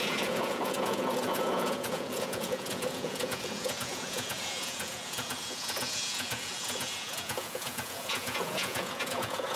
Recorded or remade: remade